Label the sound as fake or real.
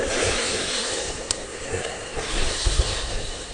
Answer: fake